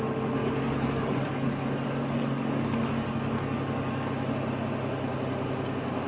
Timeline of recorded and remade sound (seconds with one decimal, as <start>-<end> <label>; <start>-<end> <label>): 0.0-0.4 recorded; 0.4-4.1 remade; 4.1-6.1 recorded